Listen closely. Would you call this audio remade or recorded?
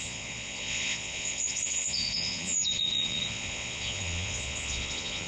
remade